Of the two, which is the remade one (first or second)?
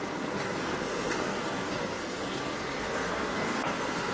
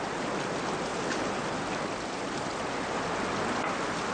first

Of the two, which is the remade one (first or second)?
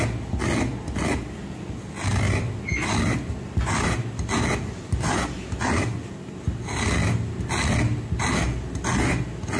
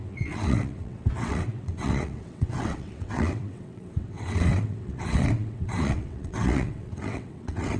second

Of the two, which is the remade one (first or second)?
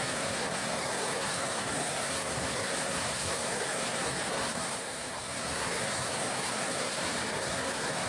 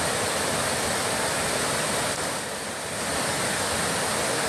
first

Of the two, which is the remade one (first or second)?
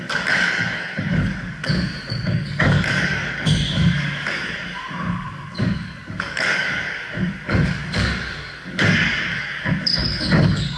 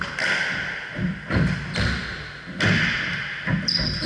first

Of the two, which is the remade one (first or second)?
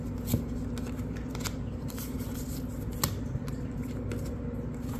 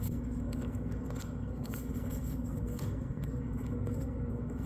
second